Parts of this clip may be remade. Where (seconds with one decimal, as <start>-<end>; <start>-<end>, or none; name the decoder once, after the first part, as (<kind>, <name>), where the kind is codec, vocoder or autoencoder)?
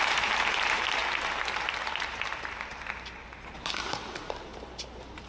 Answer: 0.0-1.0 (vocoder, BigVGAN v2); 1.8-2.7; 3.5-4.5